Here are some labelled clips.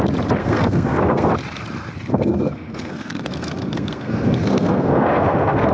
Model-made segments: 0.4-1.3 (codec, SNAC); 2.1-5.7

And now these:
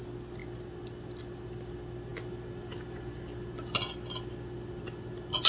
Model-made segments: none

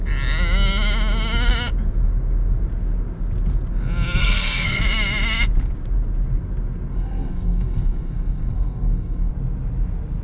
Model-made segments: 4.2-4.8 (codec, SNAC); 6.9-9.3

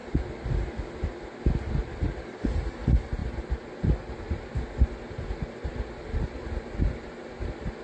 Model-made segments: none

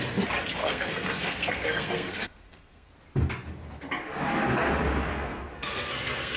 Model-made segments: 0.6-2.9 (codec, SNAC); 5.1-6.4